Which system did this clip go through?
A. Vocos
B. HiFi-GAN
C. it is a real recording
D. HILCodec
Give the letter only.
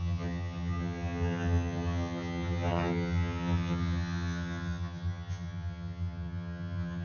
B